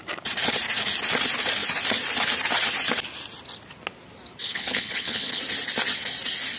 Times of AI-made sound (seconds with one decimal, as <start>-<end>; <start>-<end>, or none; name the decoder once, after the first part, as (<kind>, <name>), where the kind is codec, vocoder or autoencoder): 4.4-5.4 (codec, HILCodec)